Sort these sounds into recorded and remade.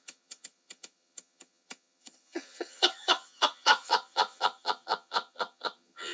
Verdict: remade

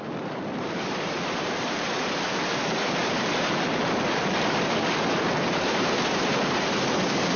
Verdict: remade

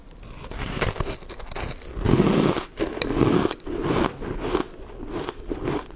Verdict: recorded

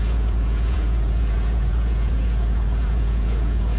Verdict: remade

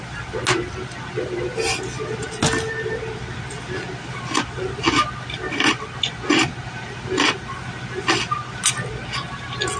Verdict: recorded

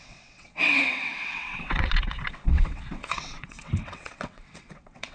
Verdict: remade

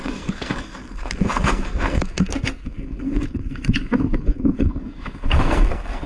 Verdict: remade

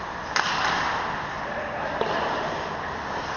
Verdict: recorded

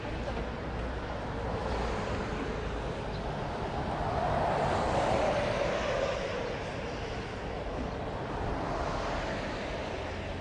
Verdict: recorded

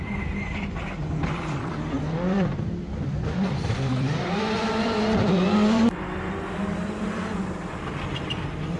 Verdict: remade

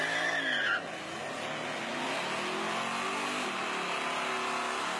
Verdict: recorded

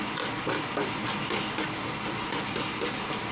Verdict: recorded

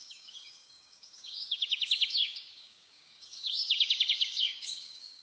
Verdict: remade